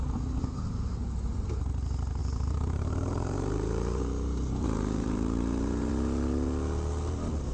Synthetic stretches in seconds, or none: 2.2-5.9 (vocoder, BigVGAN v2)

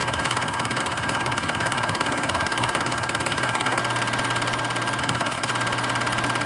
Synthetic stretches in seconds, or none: 0.0-3.8 (codec, SNAC); 5.0-5.5

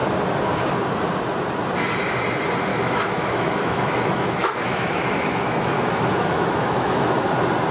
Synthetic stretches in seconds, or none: 2.7-7.3 (autoencoder, DAC-VAE)

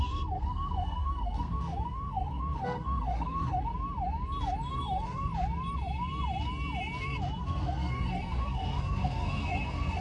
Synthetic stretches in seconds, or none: 0.0-3.7 (codec, SNAC); 4.7-5.3; 7.4-10.0

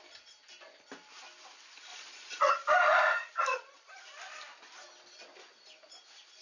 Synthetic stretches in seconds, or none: 1.9-2.5 (vocoder, Vocos); 3.5-4.0

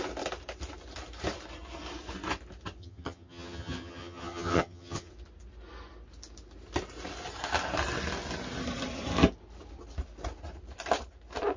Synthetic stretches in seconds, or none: 2.8-5.1 (vocoder, HiFi-GAN)

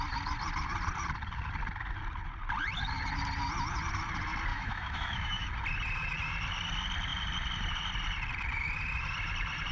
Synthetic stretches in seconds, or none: 4.5-5.5 (autoencoder, DAC-VAE)